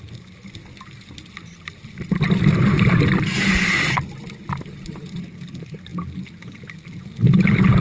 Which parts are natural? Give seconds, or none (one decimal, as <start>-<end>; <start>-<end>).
0.0-2.7; 3.8-7.8